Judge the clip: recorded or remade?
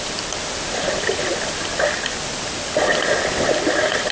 recorded